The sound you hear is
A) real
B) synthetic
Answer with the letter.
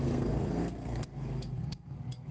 B